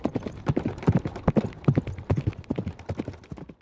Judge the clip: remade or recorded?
recorded